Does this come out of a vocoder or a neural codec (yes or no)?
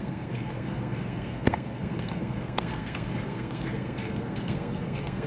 yes